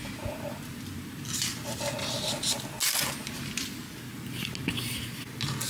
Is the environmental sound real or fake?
real